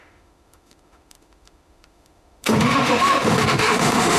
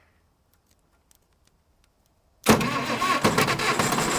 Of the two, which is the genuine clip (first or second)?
second